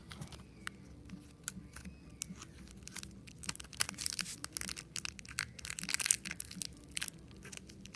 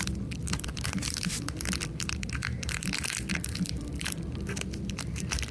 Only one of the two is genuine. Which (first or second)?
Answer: first